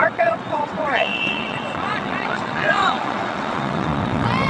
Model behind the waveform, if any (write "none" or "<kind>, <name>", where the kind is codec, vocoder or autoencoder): vocoder, WaveNeXt